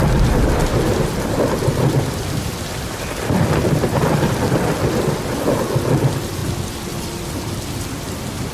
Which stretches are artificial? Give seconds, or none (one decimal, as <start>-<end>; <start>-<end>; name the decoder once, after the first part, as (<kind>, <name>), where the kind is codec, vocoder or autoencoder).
none